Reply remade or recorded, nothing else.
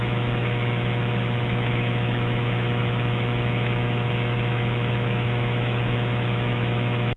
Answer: remade